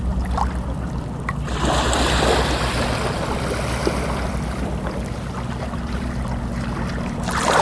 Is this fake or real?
real